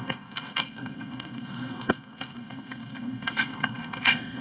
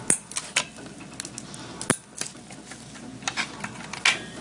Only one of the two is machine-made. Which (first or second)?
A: first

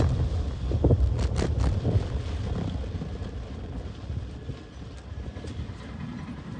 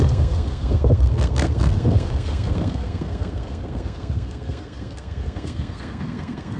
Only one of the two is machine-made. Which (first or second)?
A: second